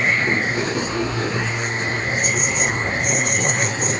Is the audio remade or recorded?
remade